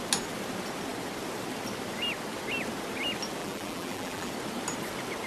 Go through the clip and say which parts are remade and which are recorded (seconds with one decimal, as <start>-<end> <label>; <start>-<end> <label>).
0.0-3.4 recorded; 3.4-4.3 remade; 4.3-5.3 recorded